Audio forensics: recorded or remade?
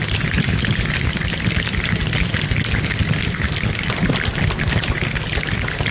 recorded